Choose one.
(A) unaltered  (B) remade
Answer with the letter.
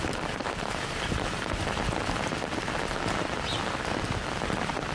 A